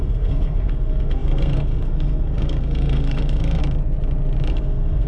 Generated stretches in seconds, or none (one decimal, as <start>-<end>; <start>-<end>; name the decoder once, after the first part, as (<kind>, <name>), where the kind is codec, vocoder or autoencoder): 0.0-3.6 (codec, SNAC); 4.5-5.1